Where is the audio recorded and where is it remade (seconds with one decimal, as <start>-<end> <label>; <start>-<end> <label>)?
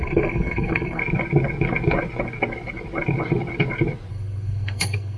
0.0-1.0 remade; 1.0-4.1 recorded; 4.1-5.2 remade